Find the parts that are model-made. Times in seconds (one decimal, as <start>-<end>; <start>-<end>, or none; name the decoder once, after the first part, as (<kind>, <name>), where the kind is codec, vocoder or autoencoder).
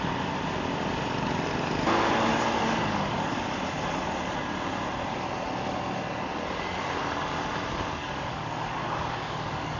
2.3-3.5 (codec, DAC); 8.0-9.8